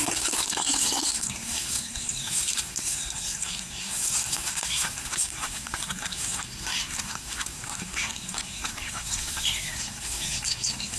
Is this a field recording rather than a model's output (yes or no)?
no